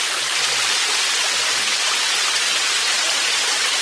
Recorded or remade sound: recorded